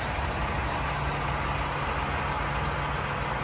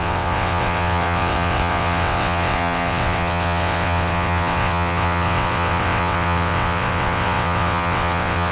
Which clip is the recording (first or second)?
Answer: first